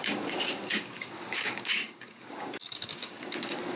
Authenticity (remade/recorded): remade